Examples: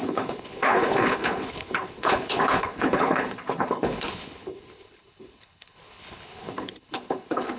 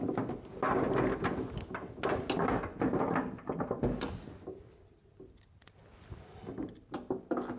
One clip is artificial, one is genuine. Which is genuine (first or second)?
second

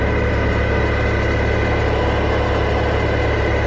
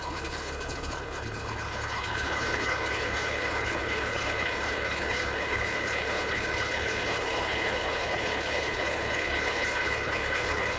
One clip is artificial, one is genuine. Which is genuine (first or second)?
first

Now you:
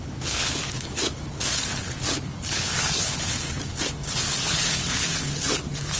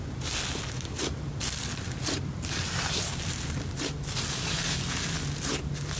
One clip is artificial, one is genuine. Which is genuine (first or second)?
second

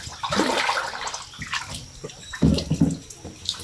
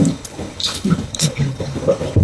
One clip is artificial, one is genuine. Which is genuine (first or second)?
first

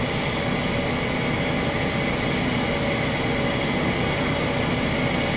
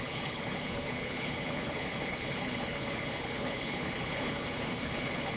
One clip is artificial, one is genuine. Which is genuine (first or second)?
first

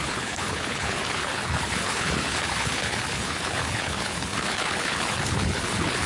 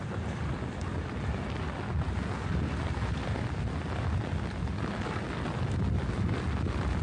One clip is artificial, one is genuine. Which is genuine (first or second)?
second